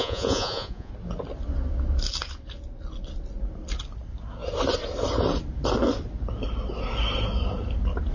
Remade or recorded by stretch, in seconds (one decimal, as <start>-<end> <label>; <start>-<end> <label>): 0.0-0.9 remade; 0.9-8.1 recorded